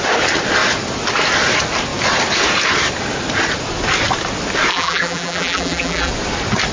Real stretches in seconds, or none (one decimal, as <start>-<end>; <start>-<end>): 0.0-4.7; 6.1-6.7